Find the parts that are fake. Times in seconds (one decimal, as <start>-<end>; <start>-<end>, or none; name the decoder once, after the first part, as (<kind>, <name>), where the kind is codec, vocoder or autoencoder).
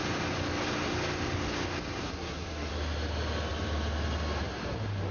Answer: 2.0-2.7 (codec, SNAC)